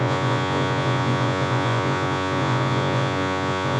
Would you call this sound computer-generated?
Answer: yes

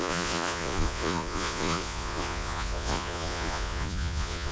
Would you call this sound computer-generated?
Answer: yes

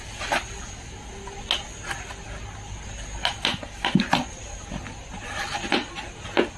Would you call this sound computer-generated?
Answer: no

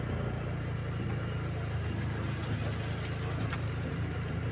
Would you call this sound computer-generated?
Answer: no